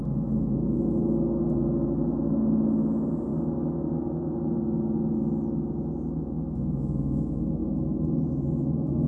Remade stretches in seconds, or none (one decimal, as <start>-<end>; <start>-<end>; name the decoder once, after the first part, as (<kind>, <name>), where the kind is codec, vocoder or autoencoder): 0.0-9.1 (autoencoder, DAC-VAE)